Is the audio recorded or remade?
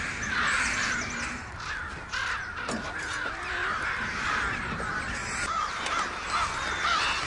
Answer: recorded